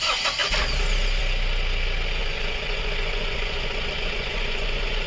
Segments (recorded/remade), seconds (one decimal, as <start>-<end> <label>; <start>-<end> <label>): 0.0-2.2 recorded; 2.2-5.1 remade